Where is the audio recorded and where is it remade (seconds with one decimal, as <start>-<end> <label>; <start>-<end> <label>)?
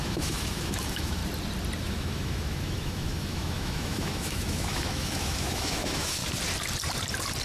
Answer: 0.0-1.2 remade; 1.2-1.8 recorded; 1.8-6.2 remade; 6.2-7.4 recorded